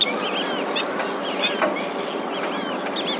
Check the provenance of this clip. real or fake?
real